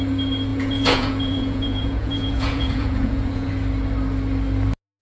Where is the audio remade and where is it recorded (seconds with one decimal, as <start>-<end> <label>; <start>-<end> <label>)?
0.0-0.5 recorded; 0.5-3.5 remade; 3.5-5.0 recorded